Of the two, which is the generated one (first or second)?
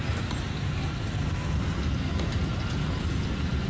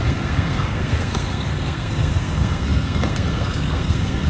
second